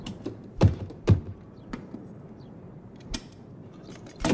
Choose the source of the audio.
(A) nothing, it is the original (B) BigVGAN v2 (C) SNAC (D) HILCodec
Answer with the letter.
B